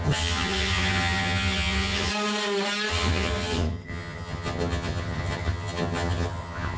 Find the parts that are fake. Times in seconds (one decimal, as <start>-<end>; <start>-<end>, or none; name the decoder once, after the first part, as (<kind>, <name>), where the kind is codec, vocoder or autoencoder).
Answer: 0.0-2.1 (vocoder, HiFi-GAN); 2.9-6.8